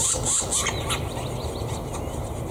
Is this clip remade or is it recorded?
recorded